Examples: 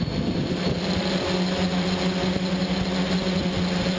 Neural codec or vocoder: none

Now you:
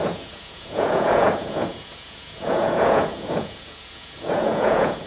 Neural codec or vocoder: vocoder, Vocos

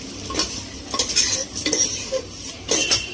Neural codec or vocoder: vocoder, BigVGAN v2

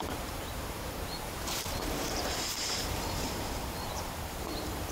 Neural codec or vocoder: vocoder, BigVGAN v2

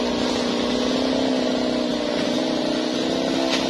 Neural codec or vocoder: none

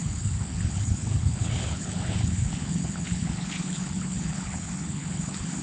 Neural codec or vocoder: codec, HILCodec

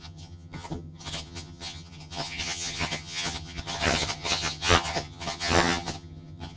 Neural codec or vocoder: vocoder, HiFi-GAN